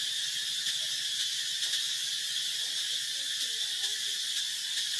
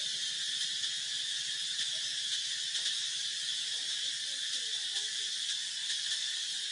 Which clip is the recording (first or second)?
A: second